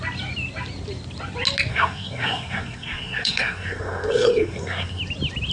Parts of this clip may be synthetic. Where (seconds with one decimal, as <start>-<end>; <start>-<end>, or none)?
1.7-5.0

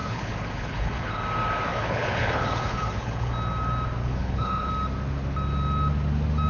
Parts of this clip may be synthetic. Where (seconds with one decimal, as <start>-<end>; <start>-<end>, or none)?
0.0-1.2; 1.7-3.3; 4.0-4.7

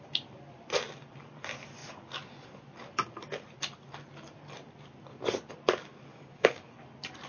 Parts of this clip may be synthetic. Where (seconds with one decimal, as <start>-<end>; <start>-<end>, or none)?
6.1-6.7

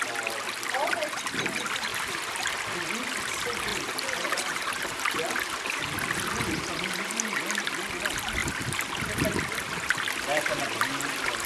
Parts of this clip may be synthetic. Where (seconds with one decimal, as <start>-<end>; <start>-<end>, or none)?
1.9-2.5; 3.7-5.8

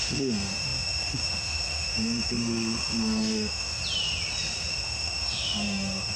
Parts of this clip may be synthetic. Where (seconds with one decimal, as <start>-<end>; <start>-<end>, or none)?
0.0-3.8; 4.7-6.2

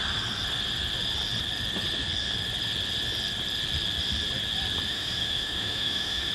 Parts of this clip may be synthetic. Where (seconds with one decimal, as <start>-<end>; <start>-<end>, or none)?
4.9-6.3